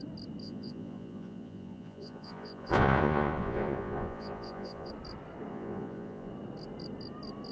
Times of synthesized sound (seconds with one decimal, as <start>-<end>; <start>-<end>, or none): 0.4-4.9; 5.5-6.3